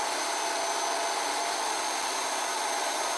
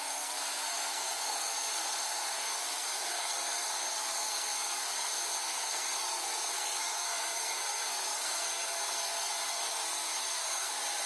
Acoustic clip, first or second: first